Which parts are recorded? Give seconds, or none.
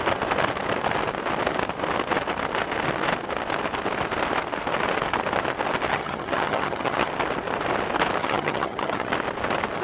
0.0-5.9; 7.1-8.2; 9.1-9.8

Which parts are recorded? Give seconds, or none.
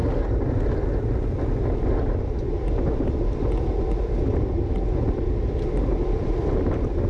0.0-7.1